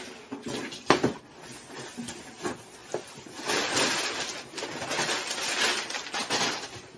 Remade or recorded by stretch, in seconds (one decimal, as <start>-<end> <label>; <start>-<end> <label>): 0.0-2.8 recorded; 2.8-3.9 remade; 3.9-7.0 recorded

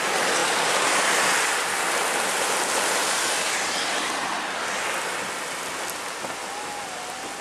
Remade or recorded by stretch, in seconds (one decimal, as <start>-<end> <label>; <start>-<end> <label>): 0.0-7.4 recorded

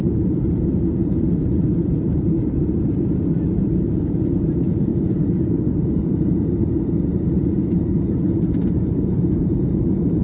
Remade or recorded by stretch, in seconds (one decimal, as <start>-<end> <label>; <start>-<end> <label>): 0.0-4.9 remade; 4.9-5.8 recorded; 5.8-10.2 remade